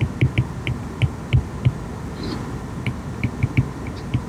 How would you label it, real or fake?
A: real